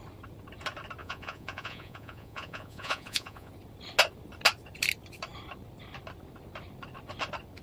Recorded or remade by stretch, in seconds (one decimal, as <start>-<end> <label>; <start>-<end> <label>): 0.0-1.0 recorded; 1.0-3.5 remade; 3.5-7.6 recorded